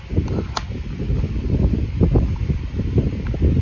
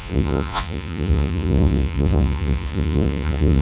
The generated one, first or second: second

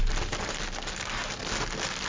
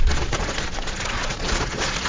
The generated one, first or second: second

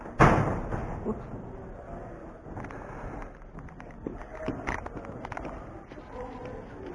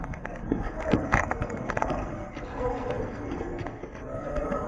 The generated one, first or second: second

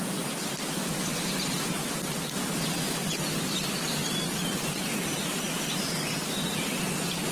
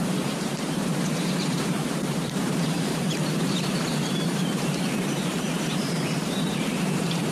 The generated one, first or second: second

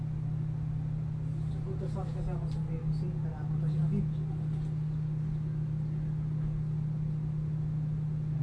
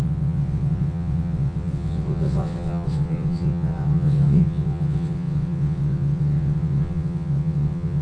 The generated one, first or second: second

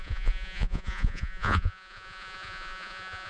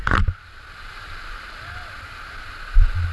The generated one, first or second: first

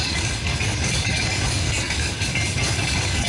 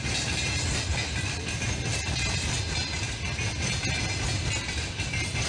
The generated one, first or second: first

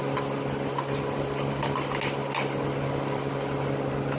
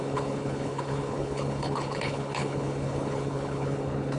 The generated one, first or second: second